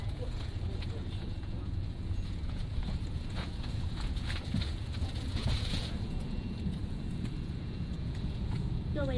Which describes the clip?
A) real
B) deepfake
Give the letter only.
B